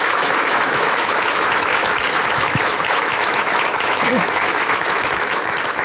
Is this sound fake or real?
fake